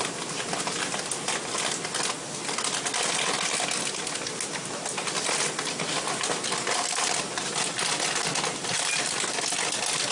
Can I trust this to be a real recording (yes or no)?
yes